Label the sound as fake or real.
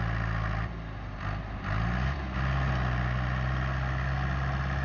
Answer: real